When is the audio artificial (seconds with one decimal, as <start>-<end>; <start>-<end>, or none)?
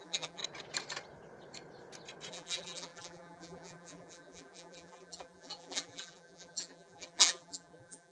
0.0-0.4; 2.3-8.1